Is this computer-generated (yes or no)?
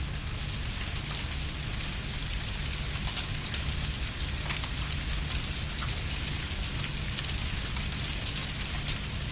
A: no